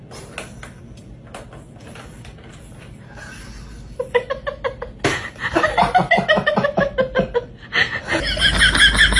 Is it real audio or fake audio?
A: real